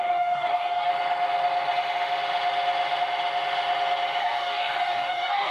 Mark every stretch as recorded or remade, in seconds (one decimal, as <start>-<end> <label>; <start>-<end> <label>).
0.0-0.9 remade; 0.9-4.2 recorded; 4.2-5.5 remade